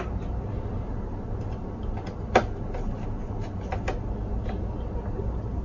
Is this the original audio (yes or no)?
yes